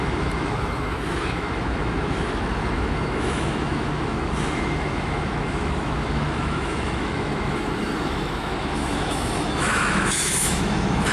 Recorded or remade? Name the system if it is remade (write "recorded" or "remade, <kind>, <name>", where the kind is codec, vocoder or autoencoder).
remade, autoencoder, DAC-VAE